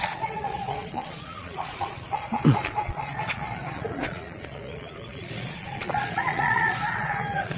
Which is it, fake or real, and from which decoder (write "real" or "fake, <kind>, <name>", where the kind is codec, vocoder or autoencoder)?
fake, vocoder, Vocos